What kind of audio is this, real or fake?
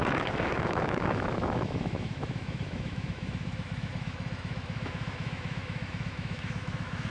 fake